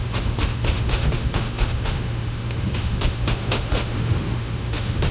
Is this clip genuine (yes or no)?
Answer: no